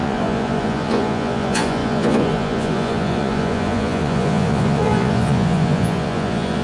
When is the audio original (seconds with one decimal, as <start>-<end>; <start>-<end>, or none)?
none